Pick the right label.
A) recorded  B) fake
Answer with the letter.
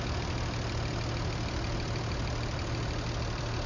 A